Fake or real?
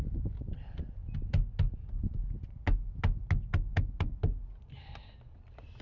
real